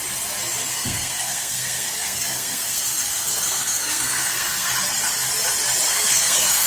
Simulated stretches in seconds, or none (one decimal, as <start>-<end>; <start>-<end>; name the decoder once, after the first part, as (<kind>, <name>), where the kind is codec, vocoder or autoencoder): 0.7-4.7 (codec, SNAC); 5.9-6.7